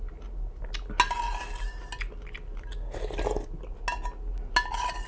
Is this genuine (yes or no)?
yes